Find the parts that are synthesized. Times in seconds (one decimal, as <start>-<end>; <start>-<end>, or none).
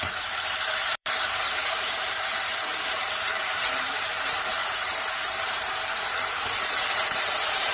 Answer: 0.0-2.7; 3.4-7.7